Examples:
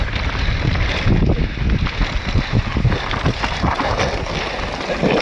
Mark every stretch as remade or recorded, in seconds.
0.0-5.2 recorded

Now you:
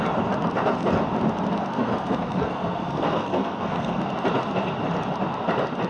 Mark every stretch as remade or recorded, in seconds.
0.0-1.6 recorded; 1.6-4.0 remade; 4.0-5.9 recorded